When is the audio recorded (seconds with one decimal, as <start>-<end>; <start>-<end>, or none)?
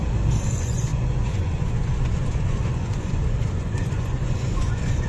0.0-0.5